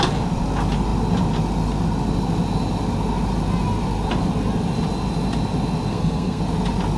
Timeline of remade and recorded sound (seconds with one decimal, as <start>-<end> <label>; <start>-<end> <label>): 0.0-5.9 recorded; 5.9-6.4 remade; 6.4-7.0 recorded